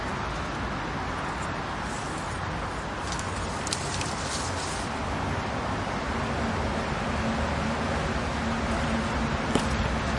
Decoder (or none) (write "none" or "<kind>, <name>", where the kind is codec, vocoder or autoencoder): none